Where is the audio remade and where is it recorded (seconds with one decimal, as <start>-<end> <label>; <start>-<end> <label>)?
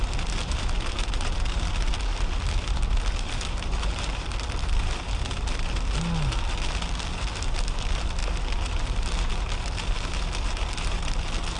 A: 0.0-11.6 recorded